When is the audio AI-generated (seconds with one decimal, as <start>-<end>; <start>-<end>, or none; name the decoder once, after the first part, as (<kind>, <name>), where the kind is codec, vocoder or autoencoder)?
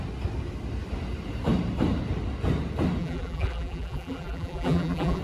3.0-5.2 (vocoder, BigVGAN v2)